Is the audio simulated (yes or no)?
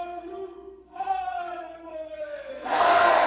yes